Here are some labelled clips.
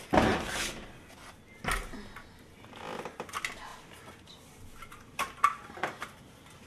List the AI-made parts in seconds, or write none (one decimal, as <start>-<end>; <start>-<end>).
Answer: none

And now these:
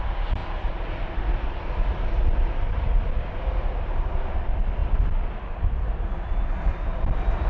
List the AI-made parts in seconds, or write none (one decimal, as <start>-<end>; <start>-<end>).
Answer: none

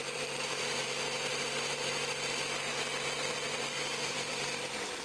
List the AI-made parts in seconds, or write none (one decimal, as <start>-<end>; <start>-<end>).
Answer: 0.0-1.3; 3.3-5.0